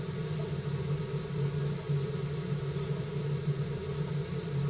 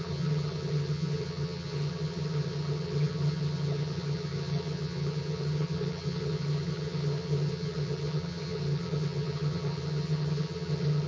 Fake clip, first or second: second